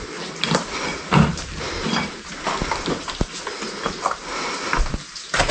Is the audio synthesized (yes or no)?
no